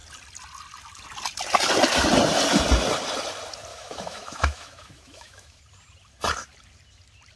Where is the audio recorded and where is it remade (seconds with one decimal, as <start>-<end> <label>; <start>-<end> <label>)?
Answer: 0.0-3.7 recorded; 3.7-5.6 remade; 5.6-7.4 recorded